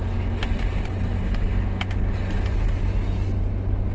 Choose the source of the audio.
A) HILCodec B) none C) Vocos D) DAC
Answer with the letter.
B